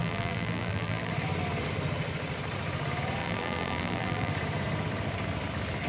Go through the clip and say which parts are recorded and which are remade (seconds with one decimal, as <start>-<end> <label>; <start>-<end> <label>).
0.0-1.1 remade; 1.1-3.2 recorded; 3.2-4.3 remade; 4.3-5.9 recorded